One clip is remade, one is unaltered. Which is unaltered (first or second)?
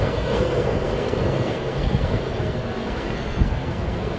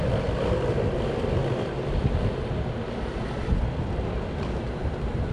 second